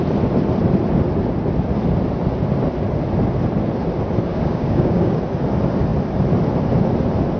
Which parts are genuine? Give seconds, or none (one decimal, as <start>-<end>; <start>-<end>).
0.0-4.3; 5.2-7.4